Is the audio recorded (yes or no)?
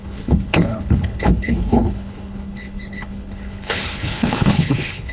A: no